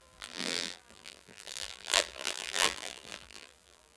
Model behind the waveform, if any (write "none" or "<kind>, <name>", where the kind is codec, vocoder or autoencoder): vocoder, BigVGAN v2